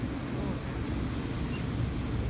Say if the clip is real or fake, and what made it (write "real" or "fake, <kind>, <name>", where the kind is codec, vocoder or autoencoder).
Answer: real